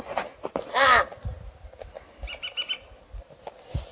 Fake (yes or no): no